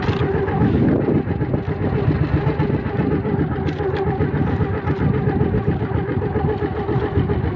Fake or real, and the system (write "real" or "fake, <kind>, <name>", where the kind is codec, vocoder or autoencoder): real